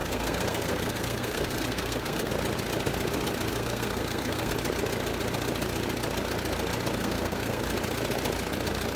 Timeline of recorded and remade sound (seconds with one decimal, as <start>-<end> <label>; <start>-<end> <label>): 0.0-2.3 remade; 2.3-3.5 recorded; 3.5-4.5 remade; 4.5-7.0 recorded; 7.0-7.6 remade; 7.6-9.0 recorded